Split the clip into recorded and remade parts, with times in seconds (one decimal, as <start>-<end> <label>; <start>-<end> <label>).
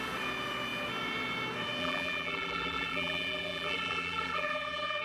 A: 0.0-1.8 recorded; 1.8-5.0 remade